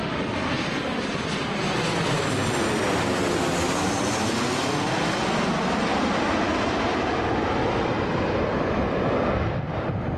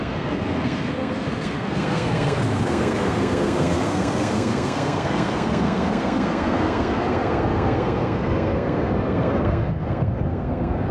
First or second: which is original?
first